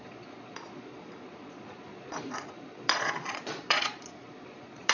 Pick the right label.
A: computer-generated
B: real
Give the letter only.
A